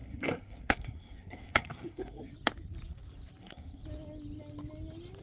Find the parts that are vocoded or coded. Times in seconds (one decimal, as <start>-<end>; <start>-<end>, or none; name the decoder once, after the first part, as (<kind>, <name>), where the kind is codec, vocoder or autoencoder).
0.0-2.3 (codec, SNAC); 3.4-3.8